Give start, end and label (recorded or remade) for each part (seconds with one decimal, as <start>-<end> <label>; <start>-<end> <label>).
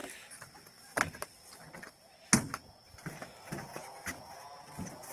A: 0.0-3.6 recorded; 3.6-5.1 remade